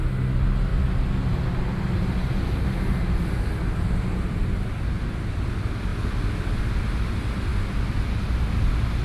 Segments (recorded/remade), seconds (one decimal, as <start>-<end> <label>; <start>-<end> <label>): 0.0-9.0 recorded